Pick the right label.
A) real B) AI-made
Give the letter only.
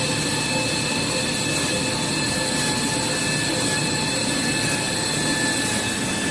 A